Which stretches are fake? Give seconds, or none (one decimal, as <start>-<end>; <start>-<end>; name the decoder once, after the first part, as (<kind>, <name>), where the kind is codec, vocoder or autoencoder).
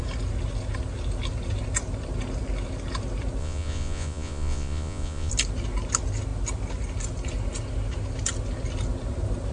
3.4-5.3 (vocoder, Vocos)